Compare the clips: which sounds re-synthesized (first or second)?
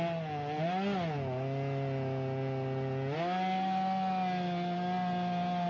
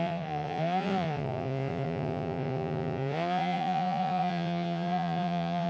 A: second